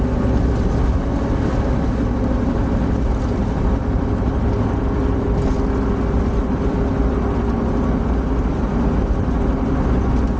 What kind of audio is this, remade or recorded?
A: recorded